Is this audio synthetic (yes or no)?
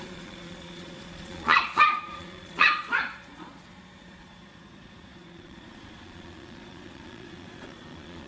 yes